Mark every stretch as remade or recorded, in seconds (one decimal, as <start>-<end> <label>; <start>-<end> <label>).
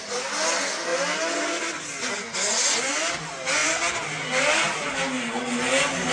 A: 0.0-6.1 recorded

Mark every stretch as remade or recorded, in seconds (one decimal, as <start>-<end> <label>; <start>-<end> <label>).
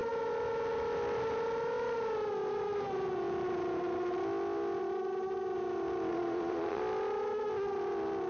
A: 0.0-6.1 recorded; 6.1-6.8 remade; 6.8-8.3 recorded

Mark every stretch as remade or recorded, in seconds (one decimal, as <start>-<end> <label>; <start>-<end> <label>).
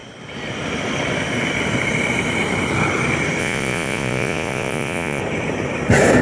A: 0.0-3.4 recorded; 3.4-5.2 remade; 5.2-6.2 recorded